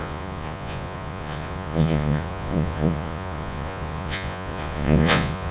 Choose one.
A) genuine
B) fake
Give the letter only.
B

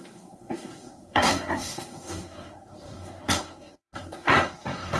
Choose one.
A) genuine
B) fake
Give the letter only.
B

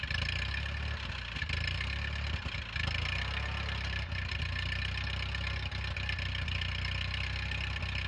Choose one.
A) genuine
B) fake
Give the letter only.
A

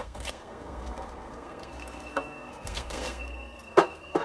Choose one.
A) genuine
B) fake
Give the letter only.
B